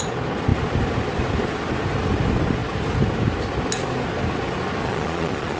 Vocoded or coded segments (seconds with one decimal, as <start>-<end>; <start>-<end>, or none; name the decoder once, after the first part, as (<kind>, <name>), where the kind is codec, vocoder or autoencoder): 4.8-5.6 (vocoder, Vocos)